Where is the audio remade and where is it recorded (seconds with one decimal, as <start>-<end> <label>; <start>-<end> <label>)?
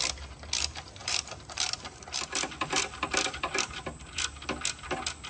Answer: 0.0-1.0 recorded; 1.0-4.2 remade; 4.2-5.3 recorded